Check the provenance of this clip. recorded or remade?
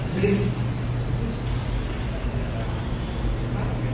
recorded